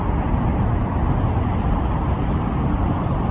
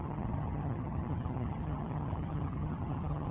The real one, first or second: first